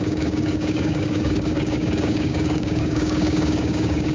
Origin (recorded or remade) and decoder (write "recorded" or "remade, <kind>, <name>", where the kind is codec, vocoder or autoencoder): remade, codec, DAC